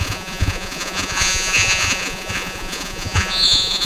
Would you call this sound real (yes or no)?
no